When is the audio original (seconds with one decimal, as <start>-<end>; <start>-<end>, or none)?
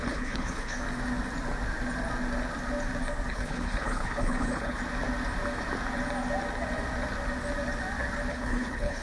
0.8-3.3; 4.8-8.3